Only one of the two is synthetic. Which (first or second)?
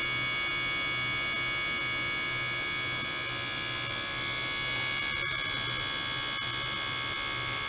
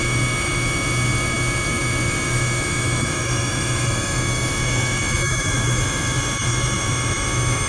second